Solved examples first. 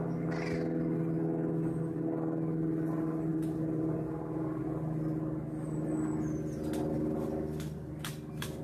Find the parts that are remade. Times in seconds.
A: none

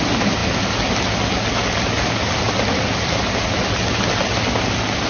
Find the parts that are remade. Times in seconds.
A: none